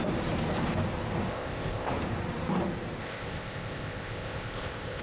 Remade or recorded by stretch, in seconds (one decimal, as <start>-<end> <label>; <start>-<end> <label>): 0.0-1.3 recorded; 1.3-1.9 remade; 1.9-3.0 recorded; 3.0-5.0 remade